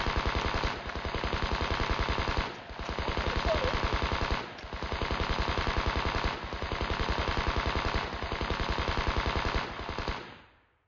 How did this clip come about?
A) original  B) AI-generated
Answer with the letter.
A